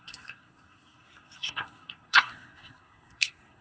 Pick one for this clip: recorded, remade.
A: remade